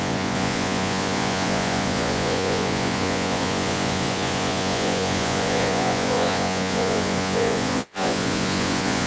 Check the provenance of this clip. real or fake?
fake